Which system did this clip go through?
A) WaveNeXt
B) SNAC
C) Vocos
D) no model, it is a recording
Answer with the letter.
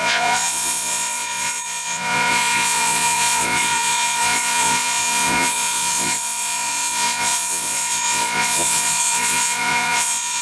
C